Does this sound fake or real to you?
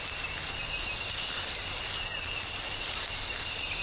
real